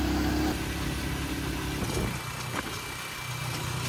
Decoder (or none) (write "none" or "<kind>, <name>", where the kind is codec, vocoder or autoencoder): none